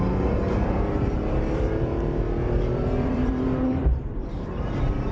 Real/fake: fake